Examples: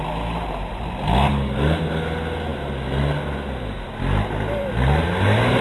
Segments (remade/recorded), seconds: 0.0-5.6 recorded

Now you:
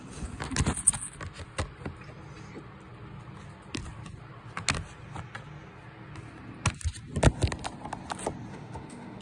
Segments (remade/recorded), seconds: 0.0-8.5 recorded; 8.5-9.2 remade

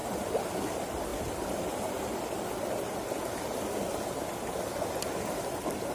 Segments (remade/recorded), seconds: 0.0-5.9 recorded

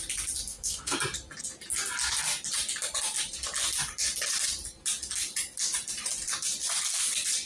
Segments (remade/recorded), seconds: 0.0-0.5 recorded; 0.5-1.0 remade; 1.0-7.5 recorded

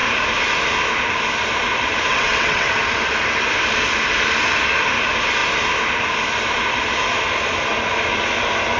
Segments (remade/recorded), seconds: 0.0-2.1 recorded; 2.1-2.7 remade; 2.7-8.8 recorded

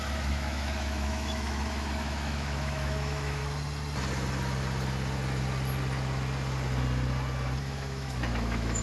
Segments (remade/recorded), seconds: 0.0-3.4 remade; 3.4-7.6 recorded; 7.6-8.8 remade

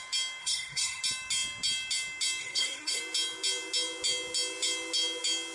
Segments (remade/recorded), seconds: 0.0-0.4 recorded; 0.4-1.0 remade; 1.0-2.4 recorded; 2.4-3.0 remade; 3.0-5.5 recorded